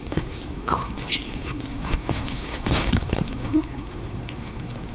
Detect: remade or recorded remade